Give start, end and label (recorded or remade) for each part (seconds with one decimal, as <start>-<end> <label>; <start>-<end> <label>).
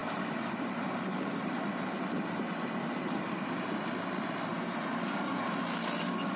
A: 0.0-3.8 remade; 3.8-4.5 recorded; 4.5-5.6 remade; 5.6-6.4 recorded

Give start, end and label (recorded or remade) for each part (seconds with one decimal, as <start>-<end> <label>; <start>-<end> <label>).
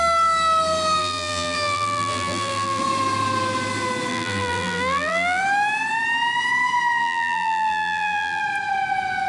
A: 0.0-1.0 recorded; 1.0-2.8 remade; 2.8-4.1 recorded; 4.1-5.4 remade; 5.4-7.0 recorded; 7.0-8.4 remade; 8.4-9.3 recorded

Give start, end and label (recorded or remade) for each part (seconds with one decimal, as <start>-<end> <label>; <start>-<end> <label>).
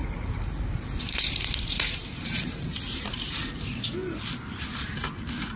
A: 0.0-3.4 remade; 3.4-5.6 recorded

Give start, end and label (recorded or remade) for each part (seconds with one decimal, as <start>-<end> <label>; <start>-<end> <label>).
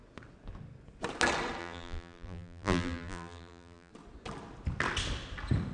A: 0.0-1.6 recorded; 1.6-3.9 remade; 3.9-5.7 recorded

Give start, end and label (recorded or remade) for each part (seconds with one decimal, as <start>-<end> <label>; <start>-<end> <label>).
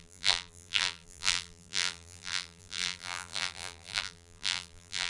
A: 0.0-5.1 remade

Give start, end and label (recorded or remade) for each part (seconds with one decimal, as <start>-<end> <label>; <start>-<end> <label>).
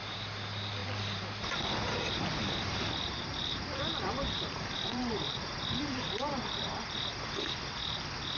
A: 0.0-0.8 recorded; 0.8-5.8 remade; 5.8-8.4 recorded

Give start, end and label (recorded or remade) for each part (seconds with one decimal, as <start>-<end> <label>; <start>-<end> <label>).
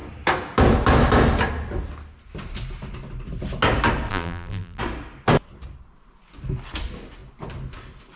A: 0.0-4.1 recorded; 4.1-4.8 remade; 4.8-8.2 recorded